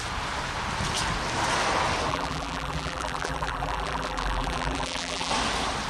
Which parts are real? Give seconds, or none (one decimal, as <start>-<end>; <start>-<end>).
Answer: 0.0-2.1; 5.3-5.9